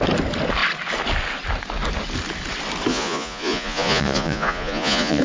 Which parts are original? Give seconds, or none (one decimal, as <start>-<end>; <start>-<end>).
0.0-2.9